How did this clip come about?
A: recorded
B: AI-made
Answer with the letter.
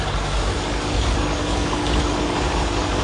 B